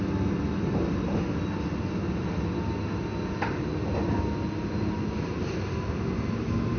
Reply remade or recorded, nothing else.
recorded